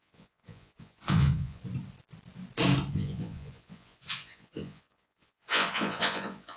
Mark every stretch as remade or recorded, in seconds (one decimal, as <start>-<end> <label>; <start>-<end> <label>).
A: 0.0-1.6 remade; 1.6-2.9 recorded; 2.9-6.6 remade